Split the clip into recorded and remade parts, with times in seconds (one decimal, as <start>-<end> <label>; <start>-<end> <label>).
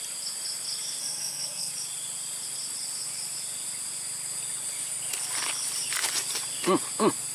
0.0-1.0 recorded; 1.0-1.7 remade; 1.7-7.3 recorded